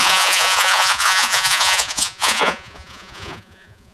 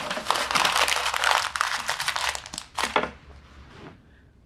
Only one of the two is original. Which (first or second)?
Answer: second